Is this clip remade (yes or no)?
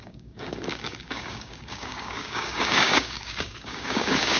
yes